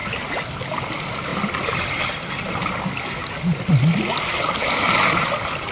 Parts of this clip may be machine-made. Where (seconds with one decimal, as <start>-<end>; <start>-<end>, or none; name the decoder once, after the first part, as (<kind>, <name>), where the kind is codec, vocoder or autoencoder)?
none